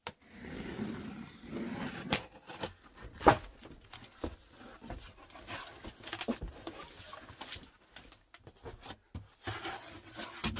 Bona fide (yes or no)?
yes